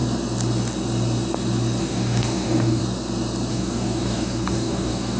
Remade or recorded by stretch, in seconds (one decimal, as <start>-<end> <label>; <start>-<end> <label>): 0.0-1.8 recorded; 1.8-2.8 remade; 2.8-3.5 recorded; 3.5-5.2 remade